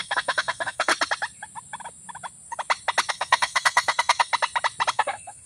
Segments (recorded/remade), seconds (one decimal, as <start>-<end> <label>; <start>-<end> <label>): 0.0-0.9 remade; 0.9-3.1 recorded; 3.1-4.3 remade; 4.3-4.9 recorded; 4.9-5.5 remade